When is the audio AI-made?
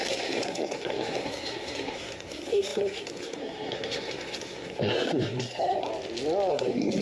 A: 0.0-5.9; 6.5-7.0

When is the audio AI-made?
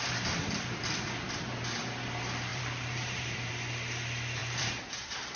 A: 2.5-3.5; 4.4-5.4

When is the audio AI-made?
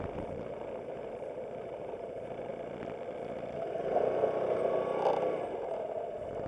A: 0.0-2.5